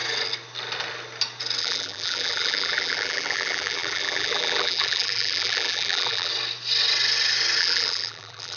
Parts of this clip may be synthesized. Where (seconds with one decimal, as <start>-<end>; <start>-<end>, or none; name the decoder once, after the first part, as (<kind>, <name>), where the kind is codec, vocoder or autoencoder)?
1.6-6.3 (vocoder, BigVGAN v2); 7.6-8.6